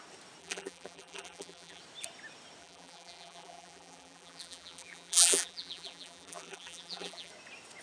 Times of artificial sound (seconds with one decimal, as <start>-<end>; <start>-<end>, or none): 0.4-1.8; 2.6-7.3